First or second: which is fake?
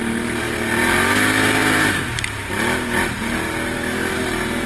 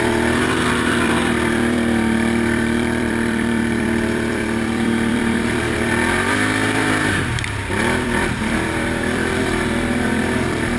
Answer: second